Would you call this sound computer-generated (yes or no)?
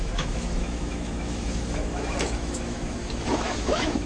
yes